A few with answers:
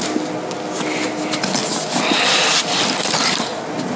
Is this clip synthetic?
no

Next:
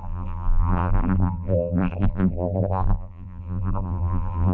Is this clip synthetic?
yes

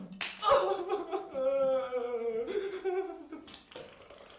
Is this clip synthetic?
no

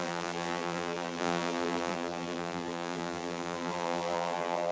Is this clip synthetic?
yes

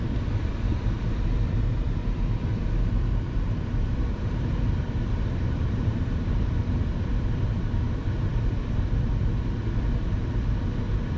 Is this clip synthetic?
yes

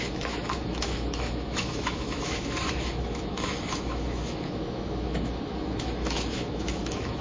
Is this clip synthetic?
yes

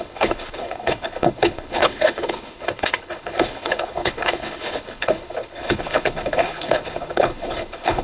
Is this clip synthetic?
yes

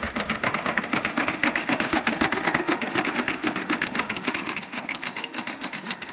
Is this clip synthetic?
yes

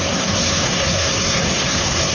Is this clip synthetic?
yes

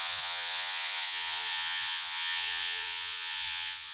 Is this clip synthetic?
yes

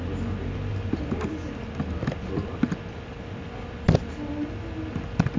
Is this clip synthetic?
no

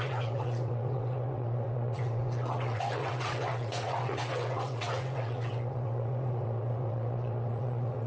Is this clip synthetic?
yes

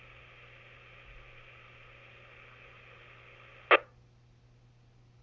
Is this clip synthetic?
no